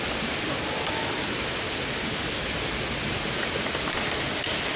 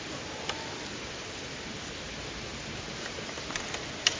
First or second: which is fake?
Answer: second